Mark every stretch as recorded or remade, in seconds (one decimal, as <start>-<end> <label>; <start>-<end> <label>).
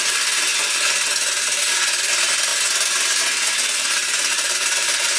0.0-5.2 recorded